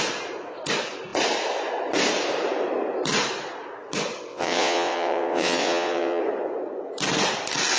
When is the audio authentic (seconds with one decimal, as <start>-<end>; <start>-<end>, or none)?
0.0-4.3; 6.2-7.8